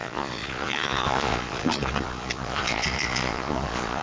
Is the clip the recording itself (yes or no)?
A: no